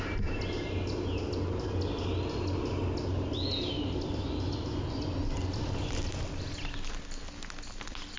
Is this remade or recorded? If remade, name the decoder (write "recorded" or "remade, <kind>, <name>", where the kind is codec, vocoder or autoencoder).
recorded